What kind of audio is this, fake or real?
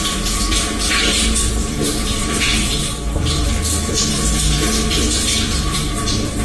fake